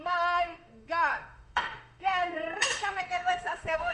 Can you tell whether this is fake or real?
fake